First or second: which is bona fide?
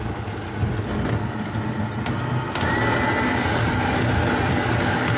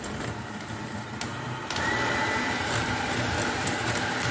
first